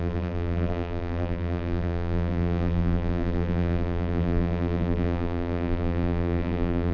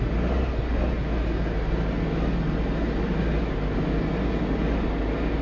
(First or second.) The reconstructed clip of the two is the first